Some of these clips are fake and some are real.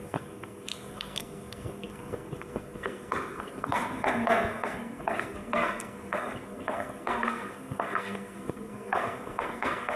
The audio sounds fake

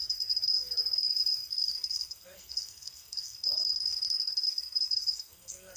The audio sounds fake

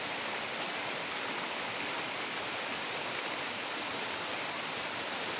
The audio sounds real